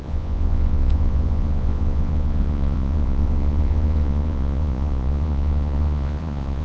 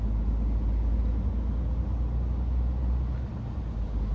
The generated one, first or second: first